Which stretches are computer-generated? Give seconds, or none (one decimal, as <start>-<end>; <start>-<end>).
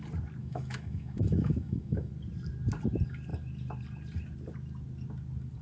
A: 0.4-2.1